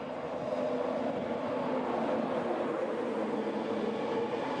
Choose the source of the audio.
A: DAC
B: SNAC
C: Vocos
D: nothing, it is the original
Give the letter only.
D